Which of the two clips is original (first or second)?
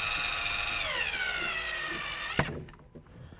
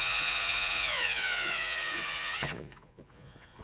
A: first